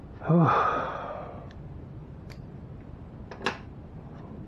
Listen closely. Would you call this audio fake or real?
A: real